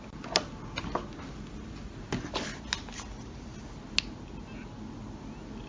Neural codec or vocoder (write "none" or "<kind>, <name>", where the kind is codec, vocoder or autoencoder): none